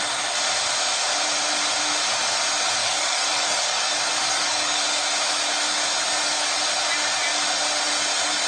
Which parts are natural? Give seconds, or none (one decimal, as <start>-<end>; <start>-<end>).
0.0-2.8; 4.8-8.5